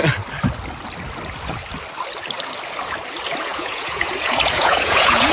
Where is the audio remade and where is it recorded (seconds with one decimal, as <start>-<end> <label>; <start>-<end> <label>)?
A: 0.0-3.5 recorded; 3.5-5.3 remade